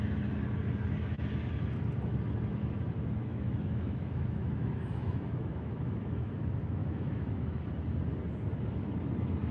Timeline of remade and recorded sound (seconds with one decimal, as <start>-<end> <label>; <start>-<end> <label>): 0.0-3.2 recorded; 3.2-6.3 remade; 6.3-6.8 recorded; 6.8-7.6 remade; 7.6-9.5 recorded